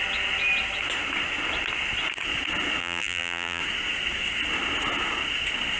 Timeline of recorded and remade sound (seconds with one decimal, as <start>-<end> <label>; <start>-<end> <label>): 0.0-2.8 recorded; 2.8-3.6 remade; 3.6-5.8 recorded

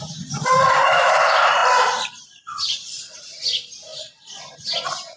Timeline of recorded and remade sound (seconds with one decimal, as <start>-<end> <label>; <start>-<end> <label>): 0.0-3.9 remade; 3.9-5.2 recorded

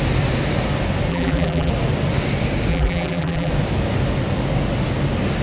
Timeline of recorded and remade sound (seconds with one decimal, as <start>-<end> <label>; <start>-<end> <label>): 0.0-1.1 recorded; 1.1-1.7 remade; 1.7-2.7 recorded; 2.7-3.5 remade; 3.5-5.4 recorded

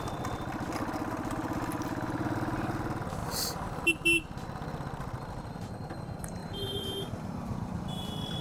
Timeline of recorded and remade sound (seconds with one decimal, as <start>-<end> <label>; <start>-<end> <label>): 0.0-6.4 recorded; 6.4-8.0 remade; 8.0-8.4 recorded

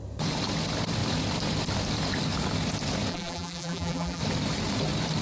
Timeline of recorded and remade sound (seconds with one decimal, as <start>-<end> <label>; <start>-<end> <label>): 0.0-3.1 recorded; 3.1-4.2 remade; 4.2-5.2 recorded

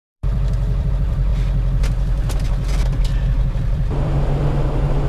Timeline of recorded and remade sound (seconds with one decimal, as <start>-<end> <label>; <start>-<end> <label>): 0.0-1.3 remade; 1.3-3.5 recorded; 3.5-5.1 remade

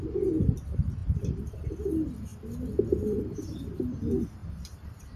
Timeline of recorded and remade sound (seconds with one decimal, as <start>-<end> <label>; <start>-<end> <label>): 0.0-1.0 recorded; 1.0-1.7 remade; 1.7-4.4 recorded; 4.4-5.2 remade